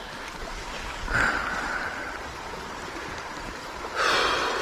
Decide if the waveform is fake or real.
real